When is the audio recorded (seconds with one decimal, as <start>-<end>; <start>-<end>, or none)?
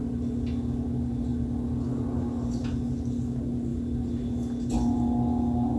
0.0-5.8